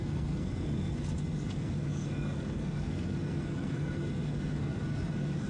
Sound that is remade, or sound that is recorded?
remade